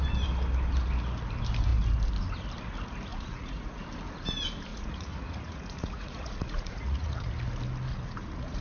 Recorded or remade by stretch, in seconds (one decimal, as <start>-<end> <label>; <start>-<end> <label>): 0.0-3.1 recorded; 3.1-3.8 remade; 3.8-4.7 recorded; 4.7-7.3 remade; 7.3-7.9 recorded; 7.9-8.6 remade